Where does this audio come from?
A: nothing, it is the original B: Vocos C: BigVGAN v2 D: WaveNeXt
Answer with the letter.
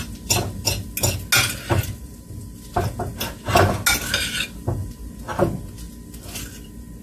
A